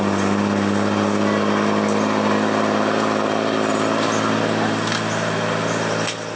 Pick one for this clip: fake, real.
real